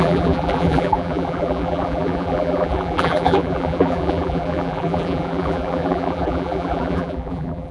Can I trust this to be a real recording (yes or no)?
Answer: no